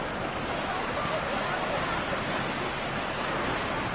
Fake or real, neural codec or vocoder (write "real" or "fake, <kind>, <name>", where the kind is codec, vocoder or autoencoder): real